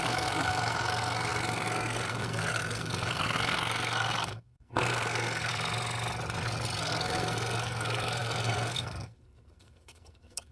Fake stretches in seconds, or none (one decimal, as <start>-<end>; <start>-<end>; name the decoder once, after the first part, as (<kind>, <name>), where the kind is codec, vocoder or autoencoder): 0.0-5.5 (codec, SNAC); 6.8-10.5